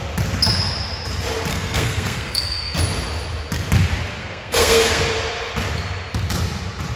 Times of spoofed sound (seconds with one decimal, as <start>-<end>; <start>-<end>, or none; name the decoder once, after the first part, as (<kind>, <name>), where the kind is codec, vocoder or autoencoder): 1.5-2.8 (codec, SNAC); 4.2-5.0